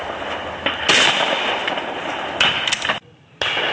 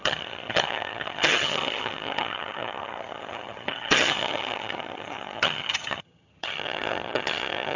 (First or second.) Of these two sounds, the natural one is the first